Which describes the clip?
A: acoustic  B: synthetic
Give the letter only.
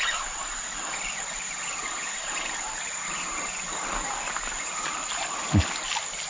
A